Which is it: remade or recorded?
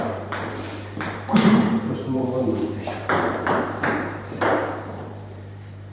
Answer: remade